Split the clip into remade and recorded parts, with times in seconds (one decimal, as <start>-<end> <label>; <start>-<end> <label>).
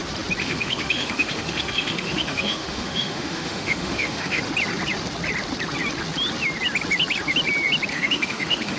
0.0-0.4 recorded; 0.4-4.4 remade; 4.4-7.9 recorded; 7.9-8.8 remade